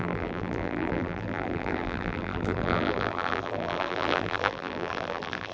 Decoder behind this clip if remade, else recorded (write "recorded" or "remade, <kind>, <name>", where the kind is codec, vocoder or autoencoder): remade, vocoder, BigVGAN v2